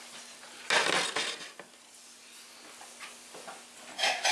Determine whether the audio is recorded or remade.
recorded